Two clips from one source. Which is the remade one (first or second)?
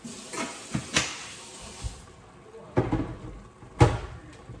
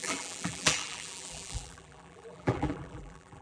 second